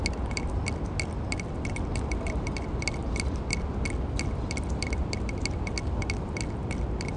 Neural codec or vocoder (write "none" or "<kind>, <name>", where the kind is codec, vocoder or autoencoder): none